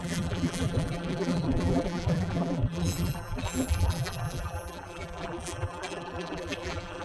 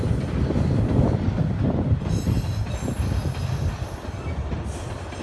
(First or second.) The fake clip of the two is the first